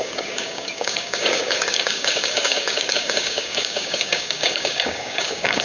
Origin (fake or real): fake